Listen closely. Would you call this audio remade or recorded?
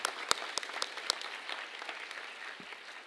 recorded